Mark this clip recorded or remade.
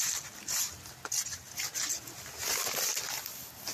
recorded